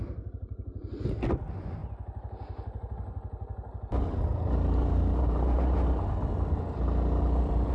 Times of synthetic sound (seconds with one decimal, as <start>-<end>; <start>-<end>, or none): 0.0-0.9